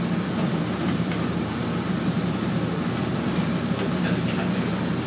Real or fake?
real